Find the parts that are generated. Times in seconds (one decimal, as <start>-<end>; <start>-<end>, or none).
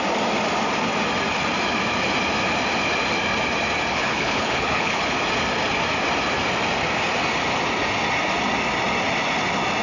3.9-5.1